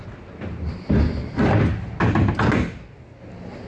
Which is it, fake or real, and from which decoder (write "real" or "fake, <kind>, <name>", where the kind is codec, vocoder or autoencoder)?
real